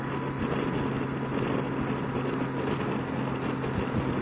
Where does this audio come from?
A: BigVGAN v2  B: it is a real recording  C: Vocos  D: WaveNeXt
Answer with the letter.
B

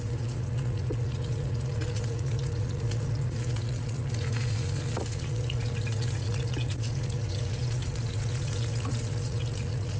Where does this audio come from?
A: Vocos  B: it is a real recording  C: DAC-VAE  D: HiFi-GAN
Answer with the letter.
A